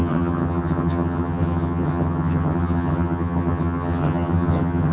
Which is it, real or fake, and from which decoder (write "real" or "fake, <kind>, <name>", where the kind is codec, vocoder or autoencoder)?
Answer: fake, vocoder, HiFi-GAN